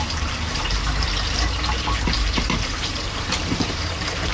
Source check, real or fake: fake